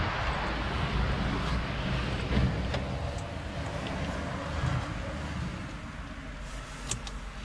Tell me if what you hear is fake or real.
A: real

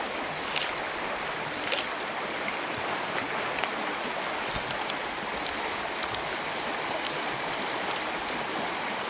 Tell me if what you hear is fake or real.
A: real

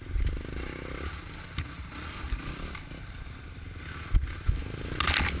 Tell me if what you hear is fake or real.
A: real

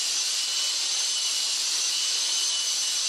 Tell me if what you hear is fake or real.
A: real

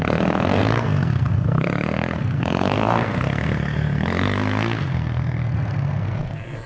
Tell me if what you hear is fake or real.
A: fake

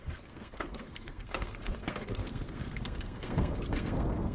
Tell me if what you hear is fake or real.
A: fake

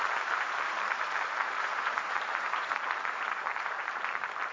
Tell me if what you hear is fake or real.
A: fake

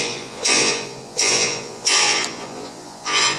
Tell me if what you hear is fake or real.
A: fake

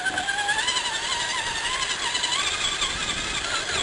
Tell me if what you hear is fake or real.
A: real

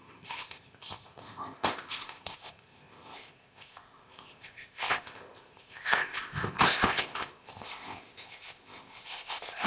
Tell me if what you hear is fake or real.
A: fake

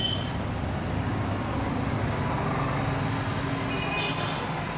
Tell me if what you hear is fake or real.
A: real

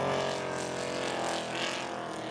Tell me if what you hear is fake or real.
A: real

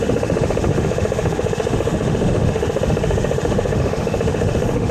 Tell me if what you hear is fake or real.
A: fake